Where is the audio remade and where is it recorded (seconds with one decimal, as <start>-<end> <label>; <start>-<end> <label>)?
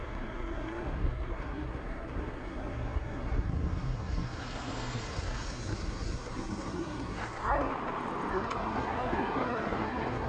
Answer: 0.0-7.7 remade; 7.7-8.3 recorded; 8.3-10.3 remade